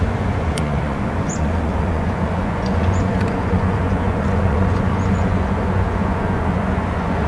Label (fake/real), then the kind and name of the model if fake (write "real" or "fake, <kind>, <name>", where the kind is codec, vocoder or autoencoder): fake, vocoder, Vocos